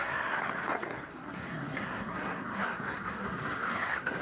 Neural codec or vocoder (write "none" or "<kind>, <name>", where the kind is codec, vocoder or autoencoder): codec, SNAC